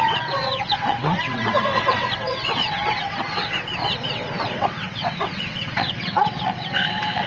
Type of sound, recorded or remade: remade